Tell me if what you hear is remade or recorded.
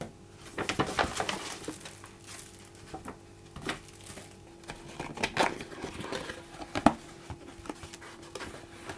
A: recorded